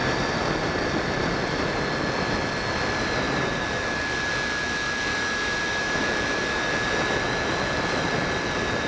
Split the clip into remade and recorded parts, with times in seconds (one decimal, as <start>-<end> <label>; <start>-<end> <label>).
0.0-5.1 recorded; 5.1-6.0 remade; 6.0-8.9 recorded